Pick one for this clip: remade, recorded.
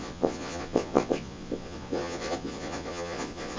remade